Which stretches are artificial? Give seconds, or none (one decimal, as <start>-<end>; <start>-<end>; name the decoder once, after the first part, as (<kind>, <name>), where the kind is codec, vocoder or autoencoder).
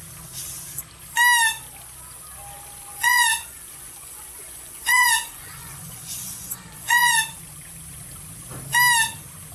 2.9-7.2 (vocoder, Vocos)